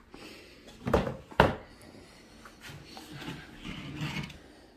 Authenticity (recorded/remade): recorded